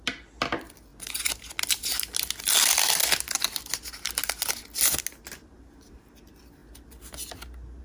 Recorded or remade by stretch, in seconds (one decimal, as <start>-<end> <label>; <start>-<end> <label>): 0.0-7.8 recorded